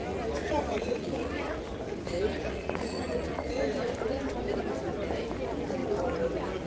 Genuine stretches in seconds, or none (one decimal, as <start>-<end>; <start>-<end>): 0.0-0.4; 1.6-2.3; 3.5-6.7